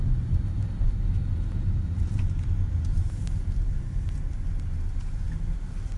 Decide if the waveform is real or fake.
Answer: real